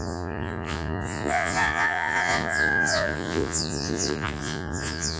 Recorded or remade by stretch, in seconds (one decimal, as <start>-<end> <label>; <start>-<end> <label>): 0.0-5.2 remade